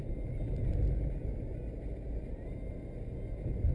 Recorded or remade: recorded